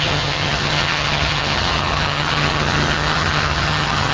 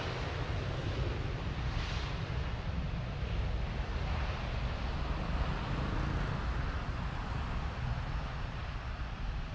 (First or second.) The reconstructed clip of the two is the first